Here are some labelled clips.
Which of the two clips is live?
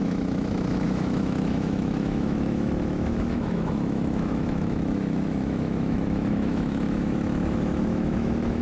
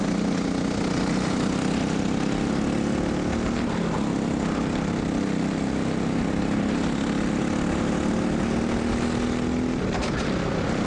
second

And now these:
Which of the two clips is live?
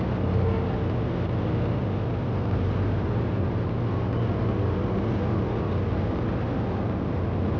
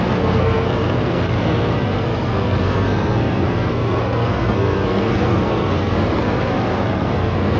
first